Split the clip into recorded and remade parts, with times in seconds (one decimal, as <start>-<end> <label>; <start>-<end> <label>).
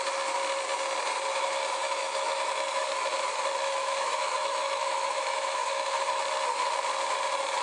0.0-1.3 recorded; 1.3-2.9 remade; 2.9-3.8 recorded; 3.8-6.2 remade; 6.2-7.6 recorded